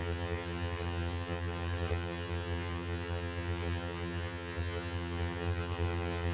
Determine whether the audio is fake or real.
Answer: fake